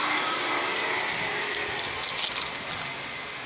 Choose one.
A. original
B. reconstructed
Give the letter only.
A